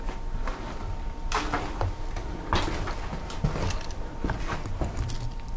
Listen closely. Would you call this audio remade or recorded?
recorded